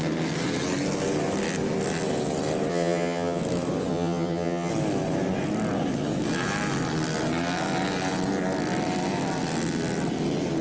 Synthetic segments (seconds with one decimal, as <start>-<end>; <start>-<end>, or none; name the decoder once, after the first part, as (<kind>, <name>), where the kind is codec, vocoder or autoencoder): 2.7-3.4 (vocoder, HiFi-GAN); 3.9-4.7